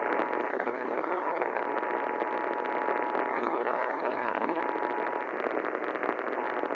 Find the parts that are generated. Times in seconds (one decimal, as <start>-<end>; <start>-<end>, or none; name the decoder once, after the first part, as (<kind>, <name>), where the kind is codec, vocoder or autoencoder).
0.5-1.6 (codec, SNAC); 3.3-4.6